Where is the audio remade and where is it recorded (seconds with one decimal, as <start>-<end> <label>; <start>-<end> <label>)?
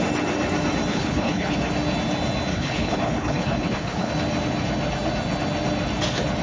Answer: 0.0-0.9 recorded; 0.9-1.6 remade; 1.6-2.5 recorded; 2.5-4.1 remade; 4.1-6.4 recorded